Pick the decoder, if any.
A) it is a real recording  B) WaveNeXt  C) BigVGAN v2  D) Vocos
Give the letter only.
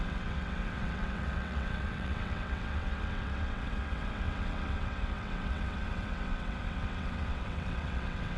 B